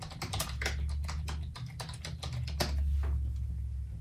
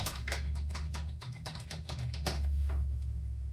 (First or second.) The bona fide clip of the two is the first